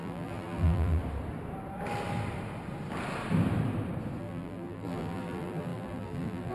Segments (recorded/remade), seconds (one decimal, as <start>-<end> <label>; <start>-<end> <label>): 0.0-1.0 remade; 1.0-4.2 recorded; 4.2-6.5 remade